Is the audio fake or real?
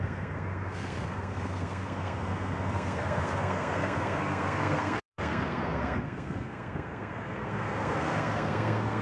fake